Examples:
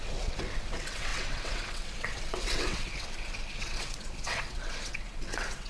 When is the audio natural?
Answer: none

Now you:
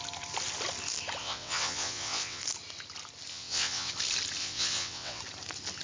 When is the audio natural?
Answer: 0.0-1.2; 2.4-3.3; 3.9-4.4; 5.2-5.8

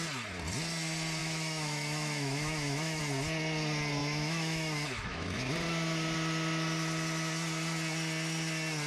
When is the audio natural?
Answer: 0.0-1.2; 3.0-4.0; 5.4-8.9

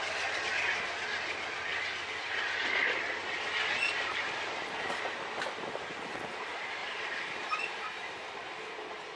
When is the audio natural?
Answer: 0.0-6.8; 7.8-9.2

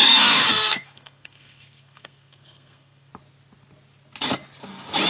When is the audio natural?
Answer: 3.1-5.1

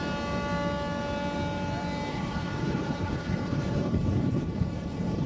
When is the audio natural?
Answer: 0.0-2.1

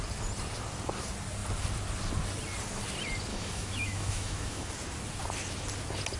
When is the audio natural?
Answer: 0.0-3.3; 4.7-6.2